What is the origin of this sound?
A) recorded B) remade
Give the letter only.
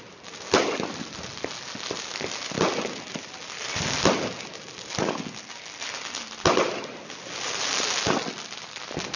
A